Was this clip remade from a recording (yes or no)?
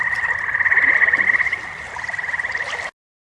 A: no